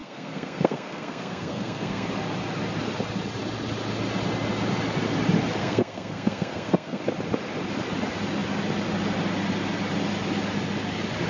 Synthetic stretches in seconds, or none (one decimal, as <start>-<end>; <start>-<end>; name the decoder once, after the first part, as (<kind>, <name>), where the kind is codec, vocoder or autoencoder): 0.0-2.1 (codec, SNAC); 5.6-7.0